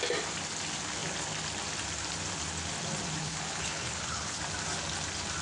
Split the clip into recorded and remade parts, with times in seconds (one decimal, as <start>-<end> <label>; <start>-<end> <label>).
0.0-3.2 recorded; 3.2-4.4 remade; 4.4-5.4 recorded